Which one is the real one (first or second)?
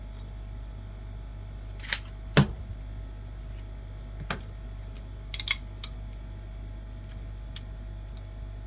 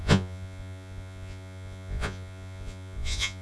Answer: first